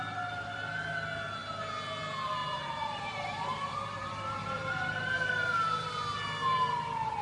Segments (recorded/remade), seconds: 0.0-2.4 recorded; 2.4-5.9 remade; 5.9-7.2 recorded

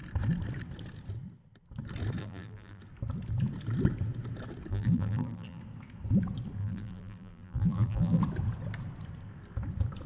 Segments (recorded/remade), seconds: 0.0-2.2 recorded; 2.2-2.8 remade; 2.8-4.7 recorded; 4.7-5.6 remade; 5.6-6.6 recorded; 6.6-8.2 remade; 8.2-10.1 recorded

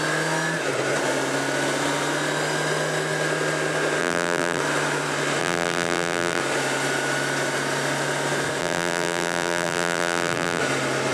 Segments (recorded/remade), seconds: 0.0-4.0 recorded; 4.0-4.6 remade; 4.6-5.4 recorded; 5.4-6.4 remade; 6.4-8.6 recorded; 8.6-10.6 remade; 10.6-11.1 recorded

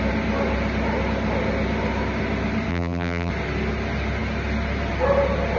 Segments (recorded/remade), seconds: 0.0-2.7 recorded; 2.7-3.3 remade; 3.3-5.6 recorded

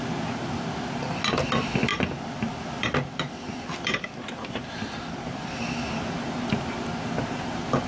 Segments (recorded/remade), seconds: 0.0-1.9 recorded; 1.9-6.1 remade; 6.1-7.9 recorded

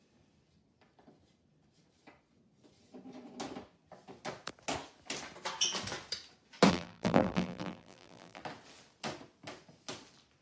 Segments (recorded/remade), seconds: 0.0-6.7 recorded; 6.7-8.4 remade; 8.4-10.4 recorded